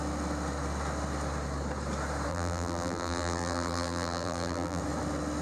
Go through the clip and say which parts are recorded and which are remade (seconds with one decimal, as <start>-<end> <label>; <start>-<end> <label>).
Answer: 0.0-2.3 recorded; 2.3-4.8 remade; 4.8-5.4 recorded